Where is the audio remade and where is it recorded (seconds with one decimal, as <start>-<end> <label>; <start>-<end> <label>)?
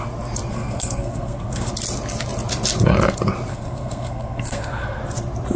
0.0-0.5 recorded; 0.5-1.7 remade; 1.7-3.5 recorded; 3.5-5.0 remade; 5.0-5.6 recorded